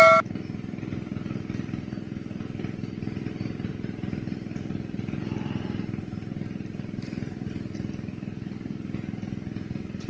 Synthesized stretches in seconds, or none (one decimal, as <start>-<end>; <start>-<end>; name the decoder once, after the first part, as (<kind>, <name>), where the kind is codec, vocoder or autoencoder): none